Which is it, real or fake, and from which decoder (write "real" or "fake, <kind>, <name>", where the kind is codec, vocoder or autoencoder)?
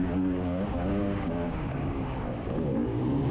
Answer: fake, codec, DAC